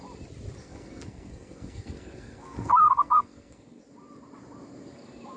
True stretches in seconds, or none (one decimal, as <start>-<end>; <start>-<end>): 0.0-0.6; 3.8-5.4